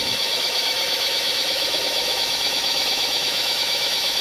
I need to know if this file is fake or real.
fake